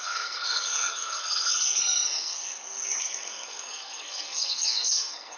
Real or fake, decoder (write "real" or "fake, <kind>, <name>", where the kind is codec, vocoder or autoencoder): fake, codec, SNAC